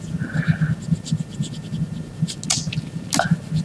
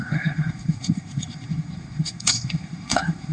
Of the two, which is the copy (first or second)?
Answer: second